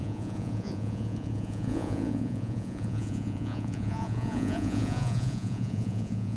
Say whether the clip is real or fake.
fake